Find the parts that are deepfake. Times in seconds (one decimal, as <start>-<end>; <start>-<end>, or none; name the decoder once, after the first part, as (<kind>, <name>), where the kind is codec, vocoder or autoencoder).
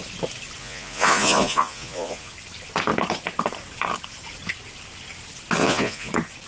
0.6-2.3 (vocoder, Vocos); 5.6-6.1